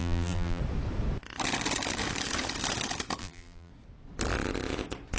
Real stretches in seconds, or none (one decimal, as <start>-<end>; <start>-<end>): 0.6-3.2; 3.7-5.2